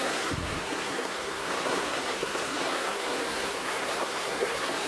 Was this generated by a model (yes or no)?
yes